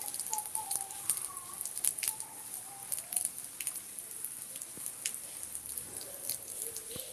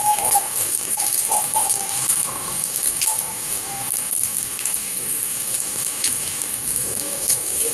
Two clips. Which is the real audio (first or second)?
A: first